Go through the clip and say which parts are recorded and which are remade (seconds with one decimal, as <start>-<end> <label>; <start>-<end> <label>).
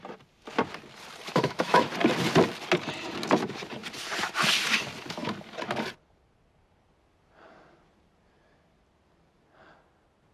0.0-1.3 recorded; 1.3-1.9 remade; 1.9-10.3 recorded